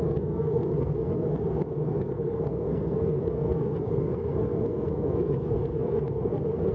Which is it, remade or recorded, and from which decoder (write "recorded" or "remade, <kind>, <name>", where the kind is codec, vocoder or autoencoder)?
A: remade, codec, SNAC